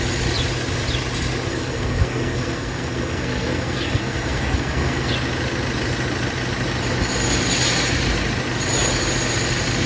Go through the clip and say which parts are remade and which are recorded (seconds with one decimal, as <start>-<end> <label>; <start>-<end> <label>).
0.0-1.5 recorded; 1.5-5.1 remade; 5.1-9.9 recorded